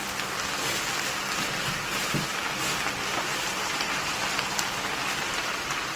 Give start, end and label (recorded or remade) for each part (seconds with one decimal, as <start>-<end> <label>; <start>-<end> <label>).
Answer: 0.0-1.8 recorded; 1.8-2.3 remade; 2.3-3.1 recorded; 3.1-4.2 remade; 4.2-5.3 recorded; 5.3-6.0 remade